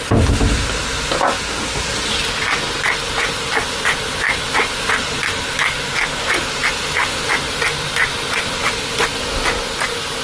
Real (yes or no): yes